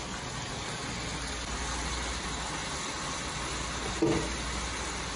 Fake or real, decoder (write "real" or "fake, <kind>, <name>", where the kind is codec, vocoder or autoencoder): real